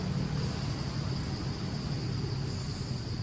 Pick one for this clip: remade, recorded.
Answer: recorded